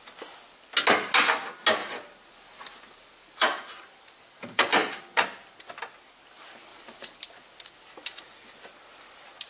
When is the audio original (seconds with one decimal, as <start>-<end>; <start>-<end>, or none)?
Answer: 0.0-1.8; 5.0-6.7; 7.3-9.5